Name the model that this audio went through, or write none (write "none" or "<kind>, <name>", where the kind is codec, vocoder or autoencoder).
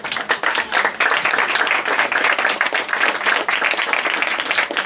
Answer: none